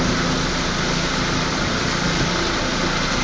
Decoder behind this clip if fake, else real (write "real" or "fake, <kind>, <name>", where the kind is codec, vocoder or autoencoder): real